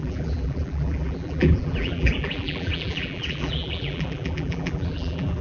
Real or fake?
fake